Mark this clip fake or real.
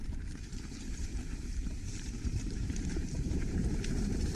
fake